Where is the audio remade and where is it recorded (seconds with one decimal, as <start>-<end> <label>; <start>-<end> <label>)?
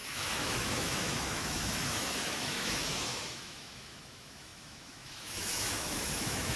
0.0-6.6 remade